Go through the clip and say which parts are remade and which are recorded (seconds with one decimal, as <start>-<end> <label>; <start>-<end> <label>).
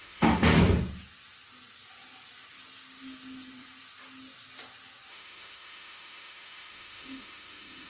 0.0-0.5 remade; 0.5-5.1 recorded; 5.1-7.9 remade